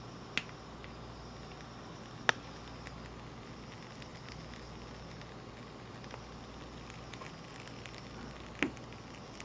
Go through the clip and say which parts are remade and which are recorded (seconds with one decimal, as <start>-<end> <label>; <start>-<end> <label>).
0.0-9.4 recorded